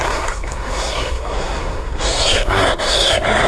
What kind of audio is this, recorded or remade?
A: remade